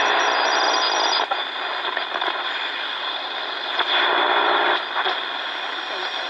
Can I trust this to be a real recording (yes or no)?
no